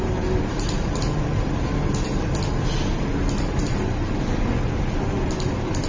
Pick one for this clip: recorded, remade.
recorded